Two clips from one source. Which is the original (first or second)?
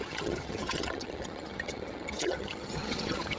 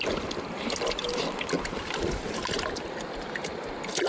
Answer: second